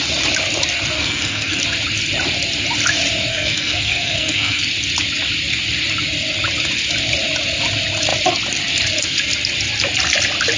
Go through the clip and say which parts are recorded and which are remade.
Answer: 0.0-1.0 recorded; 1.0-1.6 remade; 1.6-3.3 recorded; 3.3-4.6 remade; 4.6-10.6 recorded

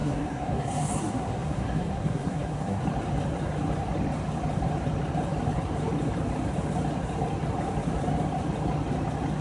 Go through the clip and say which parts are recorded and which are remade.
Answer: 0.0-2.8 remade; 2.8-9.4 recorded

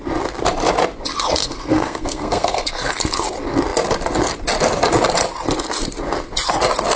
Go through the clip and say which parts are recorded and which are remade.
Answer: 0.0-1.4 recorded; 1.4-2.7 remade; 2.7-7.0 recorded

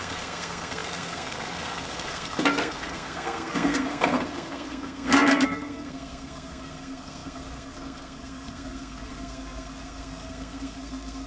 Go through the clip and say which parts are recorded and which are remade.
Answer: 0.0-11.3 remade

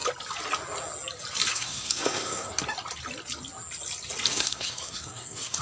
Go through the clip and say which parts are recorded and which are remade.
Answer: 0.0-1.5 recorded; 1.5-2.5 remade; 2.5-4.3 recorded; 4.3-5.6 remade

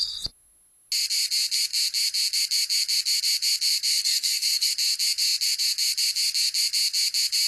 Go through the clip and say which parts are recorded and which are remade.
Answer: 0.0-3.9 recorded; 3.9-4.7 remade; 4.7-7.5 recorded

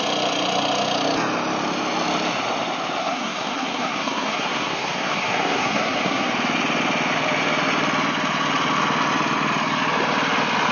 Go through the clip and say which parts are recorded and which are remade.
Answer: 0.0-3.0 recorded; 3.0-6.3 remade; 6.3-10.7 recorded